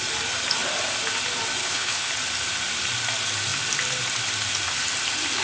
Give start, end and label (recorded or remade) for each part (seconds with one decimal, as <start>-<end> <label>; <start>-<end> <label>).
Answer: 0.0-1.6 recorded; 1.6-2.1 remade; 2.1-5.4 recorded